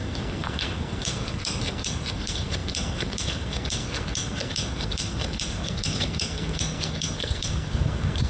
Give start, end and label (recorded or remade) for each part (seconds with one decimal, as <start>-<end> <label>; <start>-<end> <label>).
0.0-8.3 remade

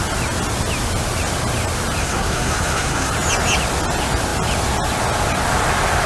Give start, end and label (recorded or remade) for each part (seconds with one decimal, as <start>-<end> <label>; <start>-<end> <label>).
0.0-2.0 recorded; 2.0-3.1 remade; 3.1-6.1 recorded

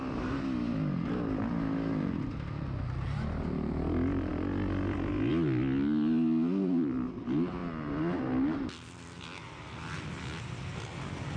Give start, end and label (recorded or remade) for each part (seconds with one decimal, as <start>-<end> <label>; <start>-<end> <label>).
0.0-11.4 recorded

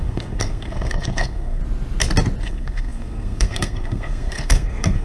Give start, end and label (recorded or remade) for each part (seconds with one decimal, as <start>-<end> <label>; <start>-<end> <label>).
0.0-1.6 remade; 1.6-2.4 recorded; 2.4-5.0 remade